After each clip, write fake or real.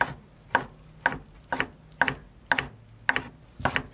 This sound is real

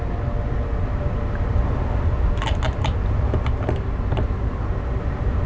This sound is real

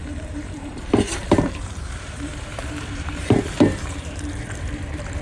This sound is fake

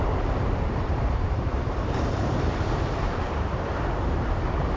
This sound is fake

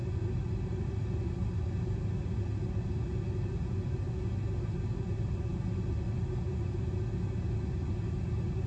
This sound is real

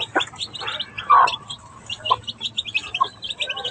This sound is real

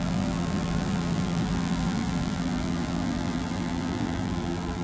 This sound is fake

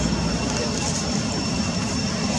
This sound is fake